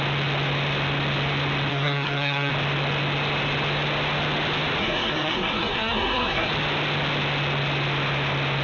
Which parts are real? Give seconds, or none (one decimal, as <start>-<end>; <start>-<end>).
0.0-1.7; 2.5-4.8; 6.5-8.6